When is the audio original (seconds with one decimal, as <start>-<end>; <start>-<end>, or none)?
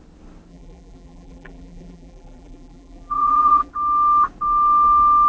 0.0-0.5; 3.7-5.3